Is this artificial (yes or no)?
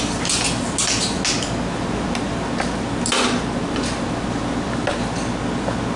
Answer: no